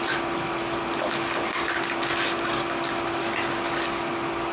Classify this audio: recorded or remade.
recorded